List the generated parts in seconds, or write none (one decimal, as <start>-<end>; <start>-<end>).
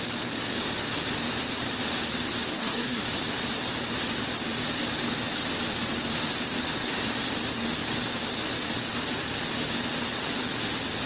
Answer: 2.5-3.0